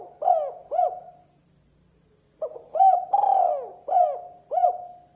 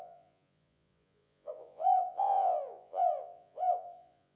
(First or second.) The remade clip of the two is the second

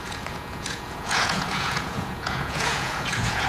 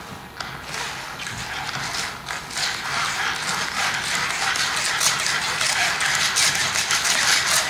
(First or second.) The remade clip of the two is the first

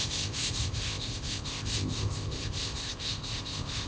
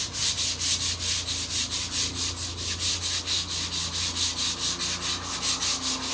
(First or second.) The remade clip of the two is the first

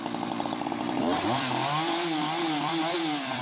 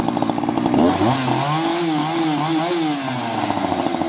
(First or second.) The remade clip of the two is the first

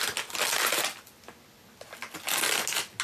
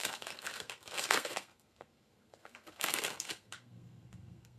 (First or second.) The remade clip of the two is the second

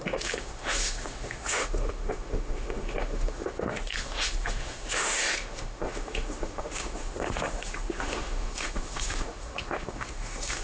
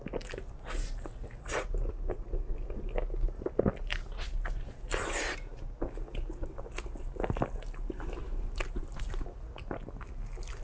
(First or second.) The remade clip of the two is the first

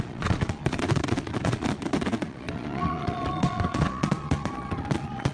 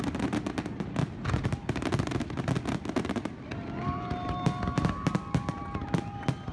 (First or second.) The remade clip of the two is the first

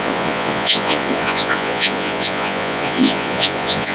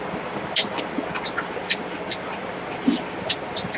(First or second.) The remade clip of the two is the first